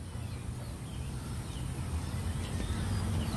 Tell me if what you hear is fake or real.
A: real